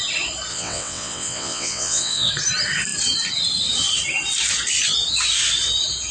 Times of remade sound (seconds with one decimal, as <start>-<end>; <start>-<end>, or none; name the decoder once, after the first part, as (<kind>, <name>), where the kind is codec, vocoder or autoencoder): 0.5-2.3 (vocoder, WaveNeXt)